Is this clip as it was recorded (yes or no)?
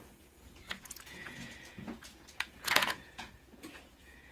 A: no